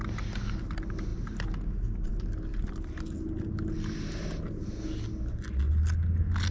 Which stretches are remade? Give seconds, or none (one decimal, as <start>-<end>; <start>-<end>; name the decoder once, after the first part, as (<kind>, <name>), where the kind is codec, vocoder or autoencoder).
none